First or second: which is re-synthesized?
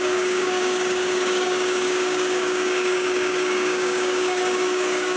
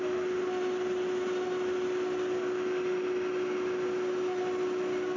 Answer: first